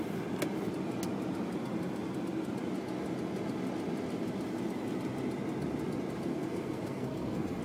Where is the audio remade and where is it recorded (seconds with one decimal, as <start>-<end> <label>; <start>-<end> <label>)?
0.0-6.3 recorded; 6.3-7.6 remade